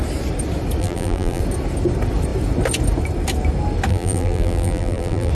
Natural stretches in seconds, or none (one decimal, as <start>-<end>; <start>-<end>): 0.0-0.8; 1.4-3.9